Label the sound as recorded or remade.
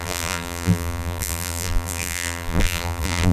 remade